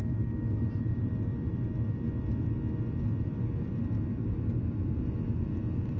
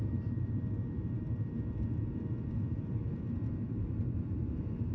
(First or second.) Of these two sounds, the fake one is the second